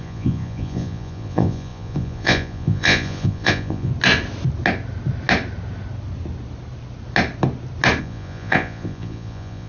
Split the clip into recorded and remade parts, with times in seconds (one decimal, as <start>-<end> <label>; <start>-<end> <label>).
0.0-3.9 remade; 3.9-8.0 recorded; 8.0-9.7 remade